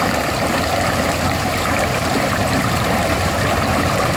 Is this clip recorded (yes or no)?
no